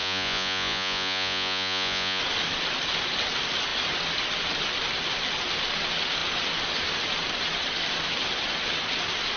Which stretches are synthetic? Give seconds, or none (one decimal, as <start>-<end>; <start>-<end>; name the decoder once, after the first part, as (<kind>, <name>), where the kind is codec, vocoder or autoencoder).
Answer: 0.0-2.2 (vocoder, Vocos)